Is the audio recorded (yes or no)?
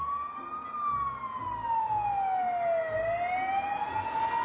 yes